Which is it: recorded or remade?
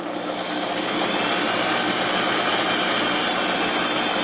recorded